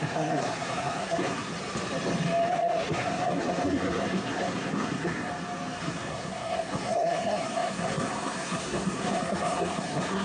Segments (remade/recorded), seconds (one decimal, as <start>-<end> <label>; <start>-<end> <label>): 0.0-1.5 remade; 1.5-2.5 recorded; 2.5-5.3 remade; 5.3-5.8 recorded; 5.8-10.2 remade